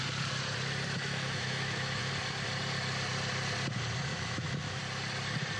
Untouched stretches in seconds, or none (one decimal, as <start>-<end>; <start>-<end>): 0.0-1.0; 2.1-4.1; 4.8-5.6